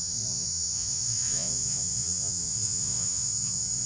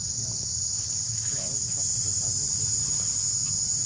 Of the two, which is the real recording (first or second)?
second